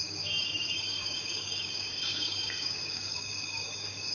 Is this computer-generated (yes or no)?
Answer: yes